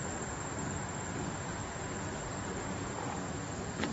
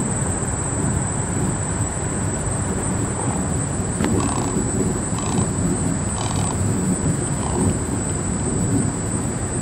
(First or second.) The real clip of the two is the first